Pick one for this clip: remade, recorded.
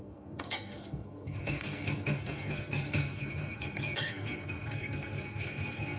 remade